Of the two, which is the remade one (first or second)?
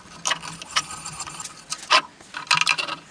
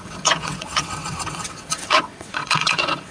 second